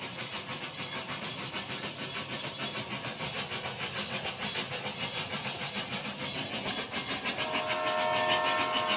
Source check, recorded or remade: recorded